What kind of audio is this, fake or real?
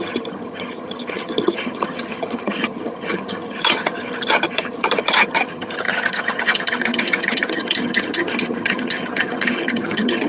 fake